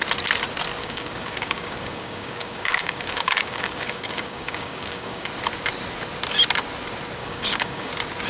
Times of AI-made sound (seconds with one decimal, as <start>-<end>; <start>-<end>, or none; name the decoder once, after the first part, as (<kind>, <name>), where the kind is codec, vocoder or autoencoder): 0.8-5.3 (codec, DAC); 7.2-7.9